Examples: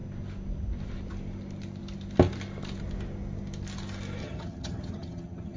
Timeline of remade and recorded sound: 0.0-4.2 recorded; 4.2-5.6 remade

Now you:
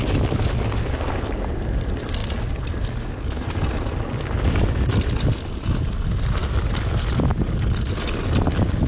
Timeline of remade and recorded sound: 0.0-8.9 recorded

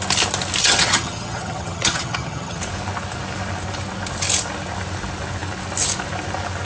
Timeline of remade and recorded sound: 0.0-0.6 recorded; 0.6-2.6 remade; 2.6-6.6 recorded

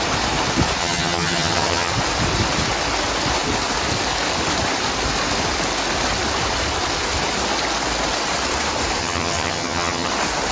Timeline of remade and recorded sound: 0.0-0.8 recorded; 0.8-1.9 remade; 1.9-9.0 recorded; 9.0-10.1 remade; 10.1-10.5 recorded

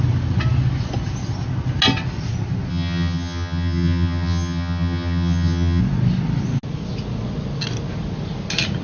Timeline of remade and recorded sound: 0.0-2.7 recorded; 2.7-5.8 remade; 5.8-8.8 recorded